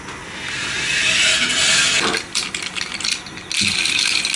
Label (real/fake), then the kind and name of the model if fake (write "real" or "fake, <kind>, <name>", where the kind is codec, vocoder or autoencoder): real